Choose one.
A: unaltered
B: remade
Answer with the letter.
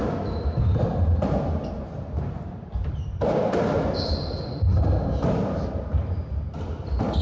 A